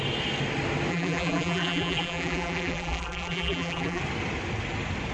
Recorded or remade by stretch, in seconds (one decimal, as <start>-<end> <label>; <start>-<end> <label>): 0.0-0.9 recorded; 0.9-4.0 remade; 4.0-5.1 recorded